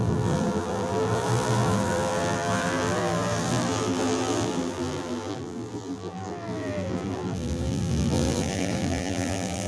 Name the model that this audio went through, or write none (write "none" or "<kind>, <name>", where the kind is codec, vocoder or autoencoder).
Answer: vocoder, BigVGAN v2